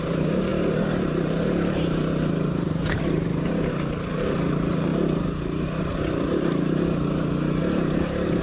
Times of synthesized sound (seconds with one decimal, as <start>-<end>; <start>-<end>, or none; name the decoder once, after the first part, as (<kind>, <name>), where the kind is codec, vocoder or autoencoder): 0.0-4.9 (vocoder, BigVGAN v2); 6.4-8.4